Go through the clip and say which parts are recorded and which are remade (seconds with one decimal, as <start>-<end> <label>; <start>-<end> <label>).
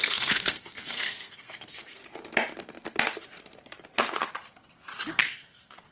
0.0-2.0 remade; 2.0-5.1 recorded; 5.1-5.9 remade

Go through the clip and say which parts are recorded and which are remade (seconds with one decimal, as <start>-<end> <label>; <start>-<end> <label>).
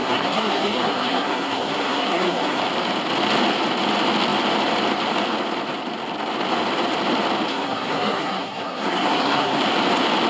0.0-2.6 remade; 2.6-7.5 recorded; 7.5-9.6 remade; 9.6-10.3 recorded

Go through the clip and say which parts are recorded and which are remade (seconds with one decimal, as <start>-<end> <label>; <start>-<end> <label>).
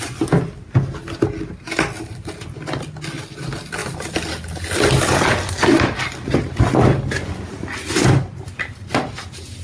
0.0-9.6 recorded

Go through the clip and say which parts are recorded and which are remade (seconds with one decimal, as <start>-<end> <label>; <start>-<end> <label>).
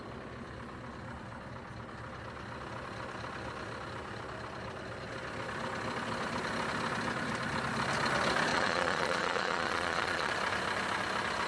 0.0-8.5 recorded; 8.5-10.3 remade; 10.3-11.5 recorded